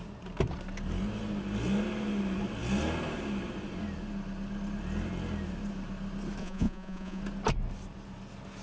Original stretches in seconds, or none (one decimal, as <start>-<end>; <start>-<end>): 0.0-6.4; 7.2-8.6